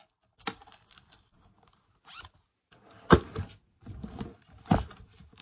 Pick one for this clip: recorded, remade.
remade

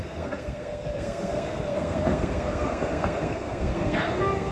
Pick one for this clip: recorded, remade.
remade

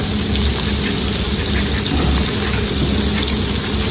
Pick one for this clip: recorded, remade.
recorded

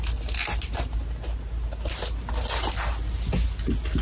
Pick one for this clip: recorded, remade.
recorded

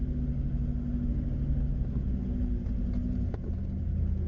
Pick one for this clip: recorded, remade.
recorded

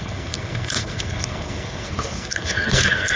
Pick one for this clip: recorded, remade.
remade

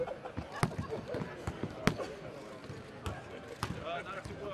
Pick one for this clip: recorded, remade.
recorded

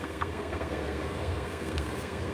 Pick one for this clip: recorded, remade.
remade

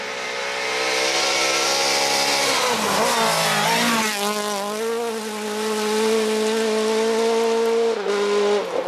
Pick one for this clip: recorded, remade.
recorded